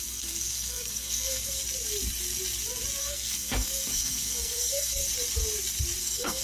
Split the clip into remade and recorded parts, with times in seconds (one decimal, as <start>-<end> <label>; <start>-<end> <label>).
0.0-1.6 remade; 1.6-3.0 recorded; 3.0-5.0 remade; 5.0-6.0 recorded; 6.0-6.4 remade